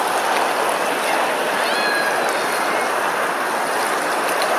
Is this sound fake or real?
real